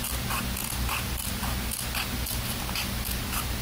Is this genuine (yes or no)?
yes